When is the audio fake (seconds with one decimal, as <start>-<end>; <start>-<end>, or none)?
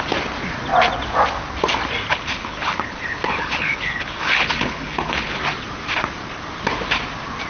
2.1-5.4